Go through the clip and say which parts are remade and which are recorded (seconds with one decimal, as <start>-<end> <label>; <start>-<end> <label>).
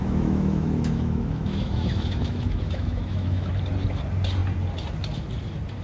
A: 0.0-3.5 remade; 3.5-5.8 recorded